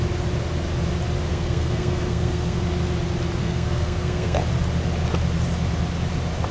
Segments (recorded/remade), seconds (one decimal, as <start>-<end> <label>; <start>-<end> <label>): 0.0-1.3 recorded; 1.3-2.6 remade; 2.6-3.4 recorded; 3.4-4.5 remade; 4.5-6.5 recorded